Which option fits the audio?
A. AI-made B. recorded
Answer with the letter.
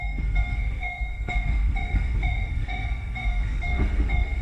A